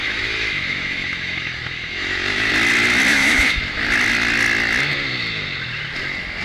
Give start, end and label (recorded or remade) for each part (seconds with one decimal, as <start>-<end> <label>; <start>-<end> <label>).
0.0-2.5 remade; 2.5-3.1 recorded; 3.1-3.6 remade; 3.6-6.4 recorded